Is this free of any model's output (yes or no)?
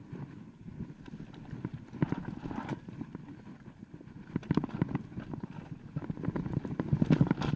yes